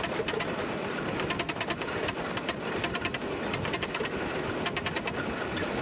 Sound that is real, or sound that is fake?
real